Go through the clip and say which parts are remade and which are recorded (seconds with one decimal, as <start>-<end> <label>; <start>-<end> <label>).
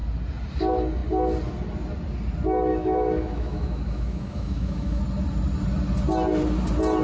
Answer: 0.0-2.7 recorded; 2.7-5.0 remade; 5.0-7.0 recorded